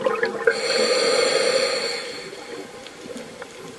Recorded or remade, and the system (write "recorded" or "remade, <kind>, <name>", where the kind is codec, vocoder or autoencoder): recorded